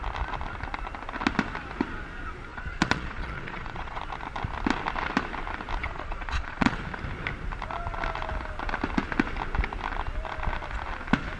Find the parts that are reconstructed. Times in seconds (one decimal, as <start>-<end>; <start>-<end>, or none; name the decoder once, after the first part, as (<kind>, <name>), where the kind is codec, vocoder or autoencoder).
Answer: 2.5-4.0 (vocoder, Vocos); 5.8-6.8

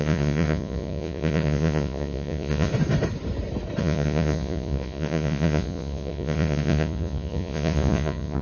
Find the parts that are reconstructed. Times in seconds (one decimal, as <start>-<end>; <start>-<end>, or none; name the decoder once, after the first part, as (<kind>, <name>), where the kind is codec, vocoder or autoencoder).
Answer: 0.0-2.7 (vocoder, Vocos); 3.8-8.4

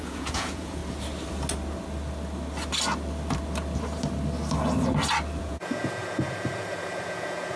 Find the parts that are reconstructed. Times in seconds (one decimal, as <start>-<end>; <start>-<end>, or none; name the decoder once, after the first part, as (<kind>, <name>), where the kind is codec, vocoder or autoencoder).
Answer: 0.0-0.8 (vocoder, Vocos); 5.4-7.6

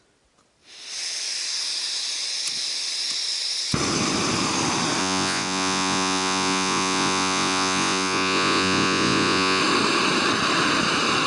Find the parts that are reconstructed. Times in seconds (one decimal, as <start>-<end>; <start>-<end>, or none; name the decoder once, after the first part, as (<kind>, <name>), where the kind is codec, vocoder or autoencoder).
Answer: 5.0-9.6 (vocoder, Vocos)

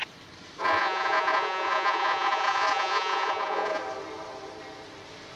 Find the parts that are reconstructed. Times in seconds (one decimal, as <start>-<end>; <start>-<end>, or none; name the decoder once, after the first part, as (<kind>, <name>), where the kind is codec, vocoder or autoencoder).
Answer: 0.6-3.8 (vocoder, Vocos)

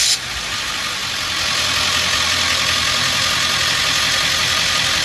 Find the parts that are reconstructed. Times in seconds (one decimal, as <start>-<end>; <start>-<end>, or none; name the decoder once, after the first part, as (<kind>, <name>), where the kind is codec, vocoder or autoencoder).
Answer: none

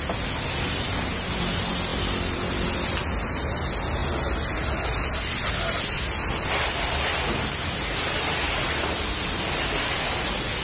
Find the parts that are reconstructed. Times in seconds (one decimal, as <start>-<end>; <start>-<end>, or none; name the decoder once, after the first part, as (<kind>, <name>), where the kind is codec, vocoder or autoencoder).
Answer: none